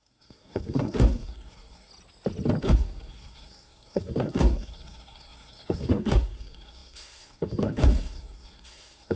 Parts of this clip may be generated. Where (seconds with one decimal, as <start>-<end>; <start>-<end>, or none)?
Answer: 0.0-1.9; 2.6-9.2